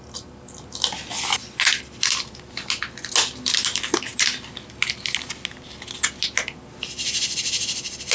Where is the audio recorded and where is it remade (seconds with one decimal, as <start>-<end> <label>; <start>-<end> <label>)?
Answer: 0.0-8.1 recorded